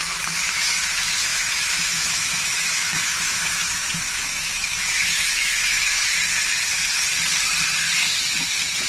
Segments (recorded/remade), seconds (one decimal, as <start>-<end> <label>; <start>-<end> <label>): 0.0-6.0 remade; 6.0-8.4 recorded; 8.4-8.9 remade